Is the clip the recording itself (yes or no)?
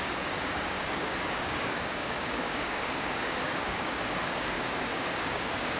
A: no